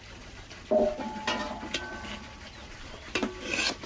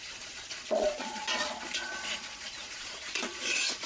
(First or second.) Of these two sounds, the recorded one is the first